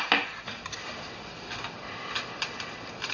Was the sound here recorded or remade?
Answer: recorded